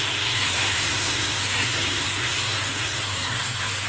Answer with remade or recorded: remade